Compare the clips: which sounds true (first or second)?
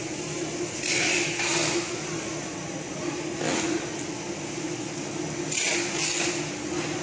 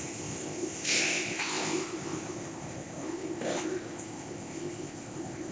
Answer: first